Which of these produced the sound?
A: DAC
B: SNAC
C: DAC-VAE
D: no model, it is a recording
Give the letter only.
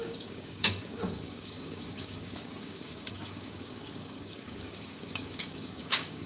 A